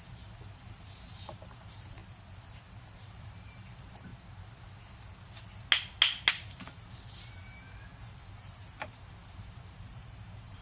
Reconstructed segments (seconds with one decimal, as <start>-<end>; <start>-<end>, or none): 0.0-2.0; 3.0-4.1; 6.3-7.4; 8.0-10.6